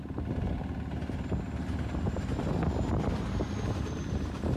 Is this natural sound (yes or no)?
yes